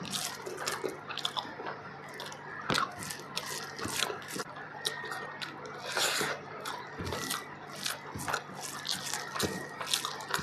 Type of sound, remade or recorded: recorded